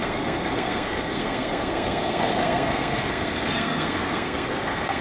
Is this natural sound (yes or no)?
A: no